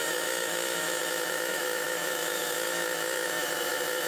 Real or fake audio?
fake